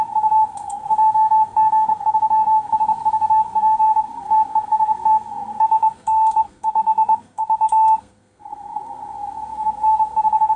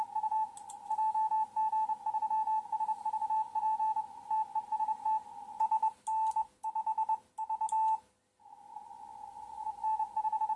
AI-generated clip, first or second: first